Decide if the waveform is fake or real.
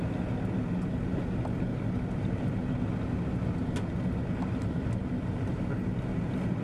real